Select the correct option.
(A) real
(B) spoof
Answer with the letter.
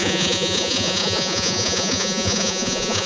B